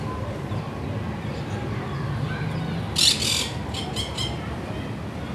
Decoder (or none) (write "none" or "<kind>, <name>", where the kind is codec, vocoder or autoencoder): none